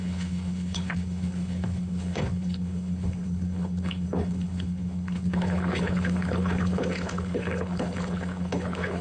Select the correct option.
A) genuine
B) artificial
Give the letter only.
B